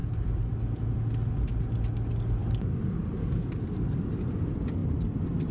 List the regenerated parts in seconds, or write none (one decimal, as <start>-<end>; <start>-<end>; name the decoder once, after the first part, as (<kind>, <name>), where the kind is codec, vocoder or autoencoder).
none